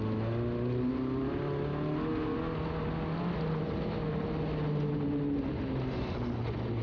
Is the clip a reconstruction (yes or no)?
no